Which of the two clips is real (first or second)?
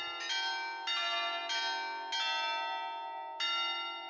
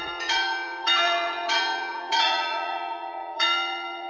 first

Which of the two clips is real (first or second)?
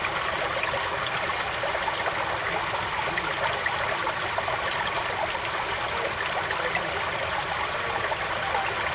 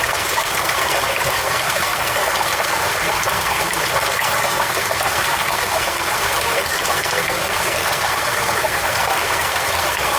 first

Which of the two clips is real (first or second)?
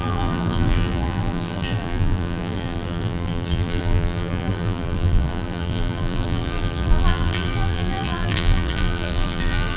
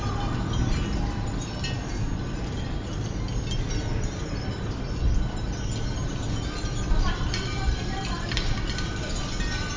second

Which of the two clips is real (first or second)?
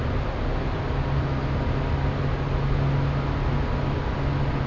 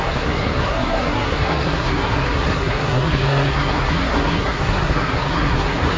first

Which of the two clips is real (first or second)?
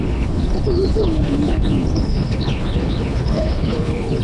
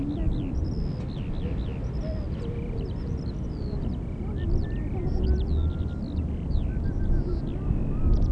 second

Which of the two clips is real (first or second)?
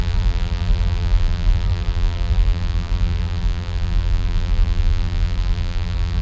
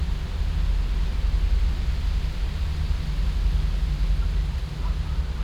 second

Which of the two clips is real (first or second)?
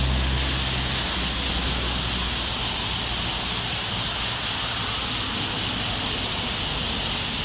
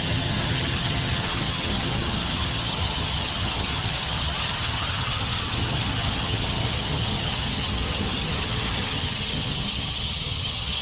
first